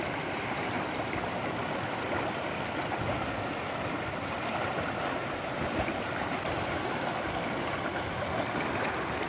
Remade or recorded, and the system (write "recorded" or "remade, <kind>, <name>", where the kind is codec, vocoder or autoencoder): recorded